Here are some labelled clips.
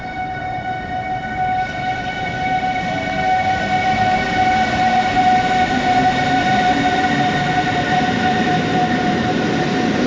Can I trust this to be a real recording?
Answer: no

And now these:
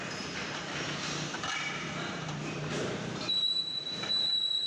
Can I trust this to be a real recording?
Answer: no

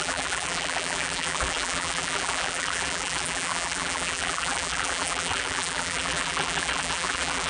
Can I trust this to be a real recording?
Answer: no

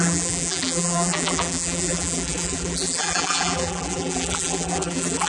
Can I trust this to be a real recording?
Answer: no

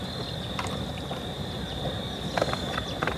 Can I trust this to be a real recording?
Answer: yes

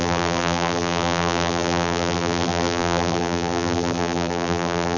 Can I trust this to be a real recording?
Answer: no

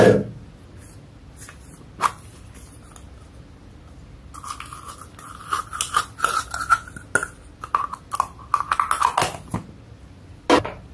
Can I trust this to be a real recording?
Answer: yes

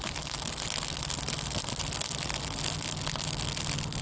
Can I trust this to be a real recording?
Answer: yes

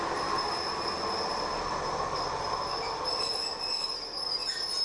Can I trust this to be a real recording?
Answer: yes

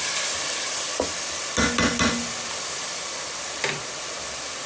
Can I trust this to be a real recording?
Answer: yes